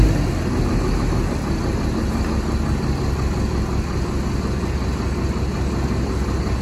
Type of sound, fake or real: real